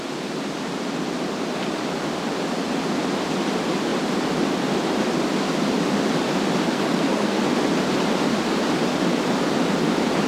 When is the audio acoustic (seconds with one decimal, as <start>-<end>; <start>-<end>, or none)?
0.0-6.7; 7.4-10.3